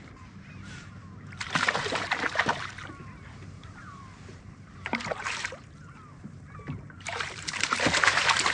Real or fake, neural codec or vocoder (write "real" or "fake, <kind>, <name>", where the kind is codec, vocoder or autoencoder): fake, vocoder, BigVGAN v2